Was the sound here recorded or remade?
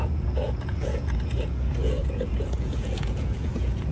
remade